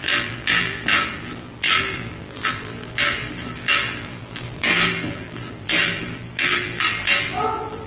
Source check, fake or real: fake